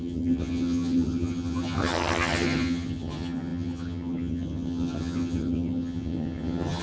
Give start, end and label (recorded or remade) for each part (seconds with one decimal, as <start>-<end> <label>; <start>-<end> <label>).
0.0-6.8 remade

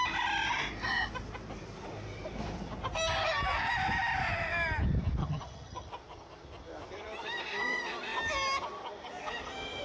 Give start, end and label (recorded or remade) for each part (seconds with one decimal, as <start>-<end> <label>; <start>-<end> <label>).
0.0-5.2 recorded; 5.2-5.9 remade; 5.9-9.8 recorded

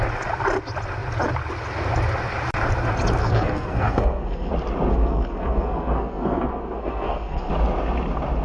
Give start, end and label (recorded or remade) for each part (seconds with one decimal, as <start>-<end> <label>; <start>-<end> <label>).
0.0-3.2 recorded; 3.2-4.5 remade; 4.5-4.9 recorded; 4.9-7.5 remade; 7.5-8.4 recorded

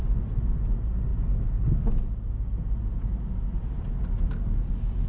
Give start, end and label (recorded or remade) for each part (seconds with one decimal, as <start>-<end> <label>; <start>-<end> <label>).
0.0-5.1 recorded

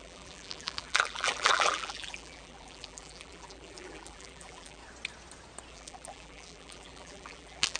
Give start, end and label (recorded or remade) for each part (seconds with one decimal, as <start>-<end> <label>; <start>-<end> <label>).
0.0-4.8 remade; 4.8-5.7 recorded; 5.7-7.8 remade

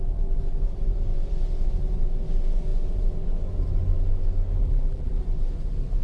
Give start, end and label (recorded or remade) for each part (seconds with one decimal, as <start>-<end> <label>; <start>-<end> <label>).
0.0-4.6 recorded; 4.6-5.2 remade; 5.2-6.0 recorded